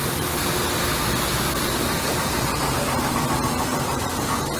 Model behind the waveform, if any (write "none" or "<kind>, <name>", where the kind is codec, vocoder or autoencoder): none